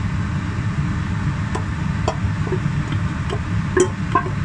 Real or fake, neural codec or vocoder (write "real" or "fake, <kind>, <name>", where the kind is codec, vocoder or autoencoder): real